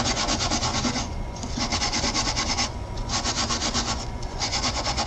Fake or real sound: fake